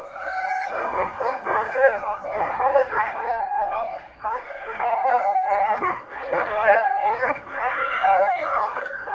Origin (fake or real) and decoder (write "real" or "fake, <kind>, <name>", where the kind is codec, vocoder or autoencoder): fake, codec, SNAC